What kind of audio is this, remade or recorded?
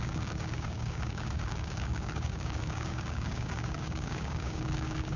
remade